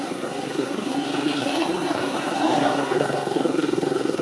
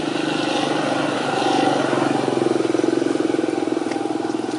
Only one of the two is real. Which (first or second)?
second